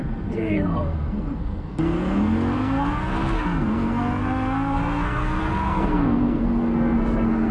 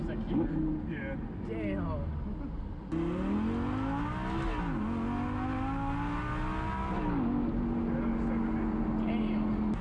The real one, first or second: second